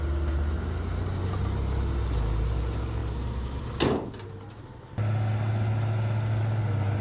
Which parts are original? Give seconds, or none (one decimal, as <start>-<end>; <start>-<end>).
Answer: 0.0-7.0